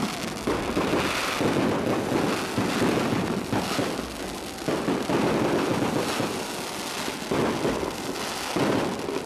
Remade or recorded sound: recorded